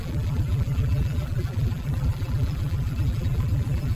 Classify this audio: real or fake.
fake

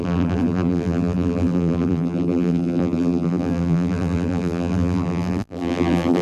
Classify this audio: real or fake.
fake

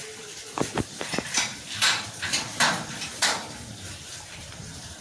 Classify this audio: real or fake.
fake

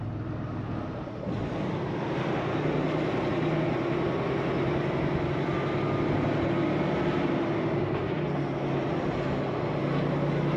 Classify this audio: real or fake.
real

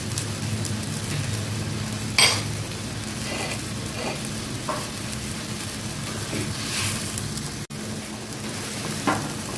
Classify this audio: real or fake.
real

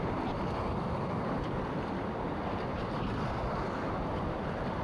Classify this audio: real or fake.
real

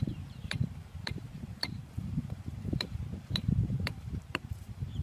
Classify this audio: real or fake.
fake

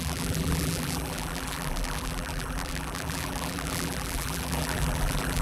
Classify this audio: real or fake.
fake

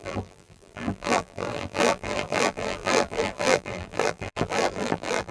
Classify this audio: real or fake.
fake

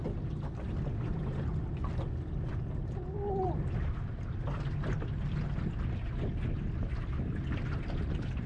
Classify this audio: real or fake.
real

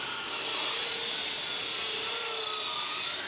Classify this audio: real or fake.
real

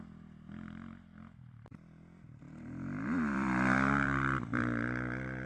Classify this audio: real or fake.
fake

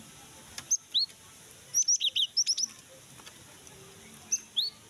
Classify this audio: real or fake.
real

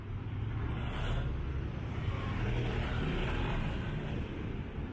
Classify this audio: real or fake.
real